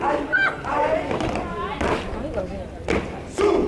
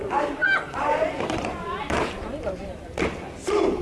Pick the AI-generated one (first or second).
second